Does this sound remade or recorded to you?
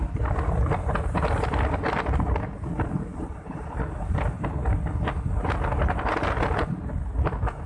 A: recorded